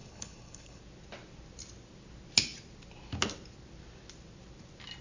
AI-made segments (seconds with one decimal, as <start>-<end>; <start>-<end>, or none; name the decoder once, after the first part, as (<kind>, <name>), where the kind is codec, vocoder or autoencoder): 0.0-0.8 (codec, HILCodec)